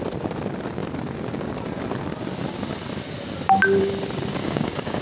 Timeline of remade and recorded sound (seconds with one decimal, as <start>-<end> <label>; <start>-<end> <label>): 0.0-4.4 recorded; 4.4-5.0 remade